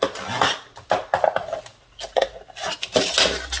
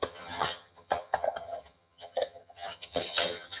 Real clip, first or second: first